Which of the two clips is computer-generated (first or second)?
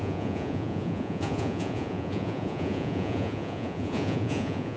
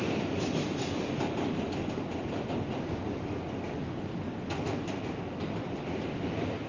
first